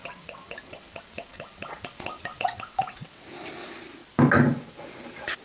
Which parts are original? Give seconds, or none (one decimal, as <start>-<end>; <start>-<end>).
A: 3.2-5.4